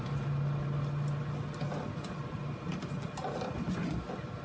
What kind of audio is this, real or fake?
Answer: real